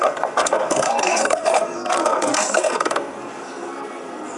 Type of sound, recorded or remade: remade